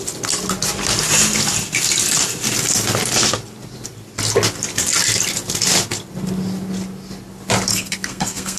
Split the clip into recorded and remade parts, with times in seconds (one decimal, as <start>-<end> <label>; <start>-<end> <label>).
0.0-7.7 recorded; 7.7-8.6 remade